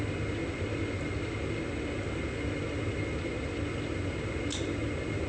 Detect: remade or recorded recorded